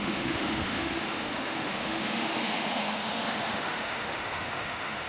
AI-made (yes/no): yes